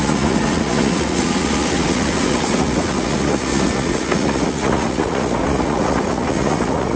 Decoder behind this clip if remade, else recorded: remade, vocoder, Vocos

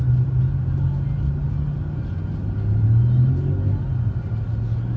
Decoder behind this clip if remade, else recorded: recorded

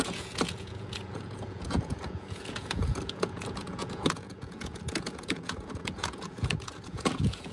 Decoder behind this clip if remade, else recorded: remade, vocoder, Vocos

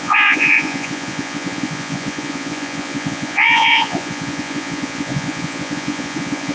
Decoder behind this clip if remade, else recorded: remade, vocoder, Vocos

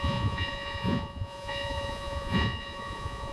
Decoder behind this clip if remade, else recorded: remade, vocoder, Vocos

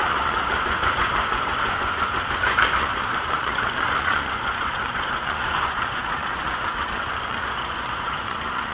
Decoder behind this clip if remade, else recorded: remade, vocoder, Vocos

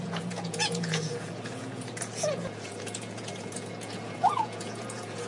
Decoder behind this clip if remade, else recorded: remade, vocoder, Vocos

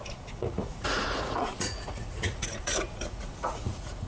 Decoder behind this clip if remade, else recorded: remade, vocoder, Vocos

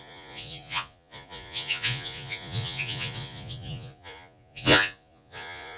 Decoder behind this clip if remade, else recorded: remade, vocoder, Vocos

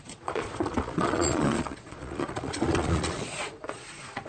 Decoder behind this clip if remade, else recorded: remade, vocoder, Vocos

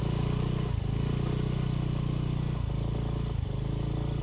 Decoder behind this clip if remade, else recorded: recorded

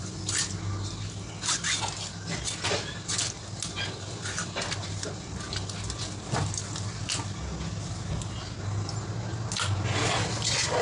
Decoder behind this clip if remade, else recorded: recorded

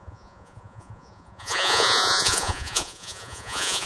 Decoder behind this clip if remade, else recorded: remade, vocoder, Vocos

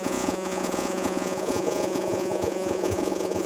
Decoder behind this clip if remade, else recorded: remade, vocoder, Vocos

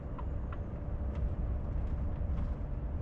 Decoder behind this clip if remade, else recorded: recorded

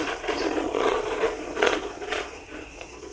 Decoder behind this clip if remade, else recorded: remade, vocoder, Vocos